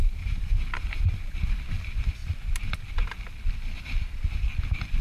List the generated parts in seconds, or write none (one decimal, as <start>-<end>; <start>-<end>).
0.0-1.6